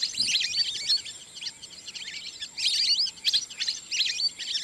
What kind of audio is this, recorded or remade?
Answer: recorded